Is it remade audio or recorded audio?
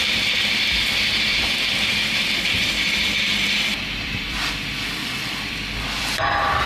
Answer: remade